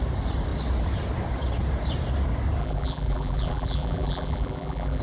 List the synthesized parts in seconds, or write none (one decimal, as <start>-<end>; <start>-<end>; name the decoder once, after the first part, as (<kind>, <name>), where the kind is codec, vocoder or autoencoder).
2.6-5.0 (vocoder, BigVGAN v2)